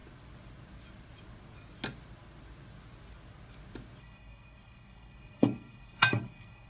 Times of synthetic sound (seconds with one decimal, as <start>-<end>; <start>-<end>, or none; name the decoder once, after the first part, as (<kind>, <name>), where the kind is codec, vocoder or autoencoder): 4.0-6.7 (codec, SNAC)